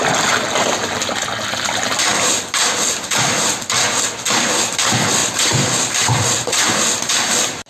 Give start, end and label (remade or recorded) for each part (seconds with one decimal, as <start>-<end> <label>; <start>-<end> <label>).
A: 0.0-5.2 recorded; 5.2-5.9 remade; 5.9-7.7 recorded